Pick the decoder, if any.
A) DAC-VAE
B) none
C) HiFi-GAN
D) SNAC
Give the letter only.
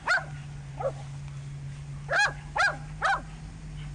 B